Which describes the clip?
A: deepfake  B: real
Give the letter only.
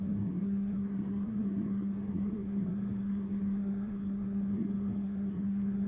A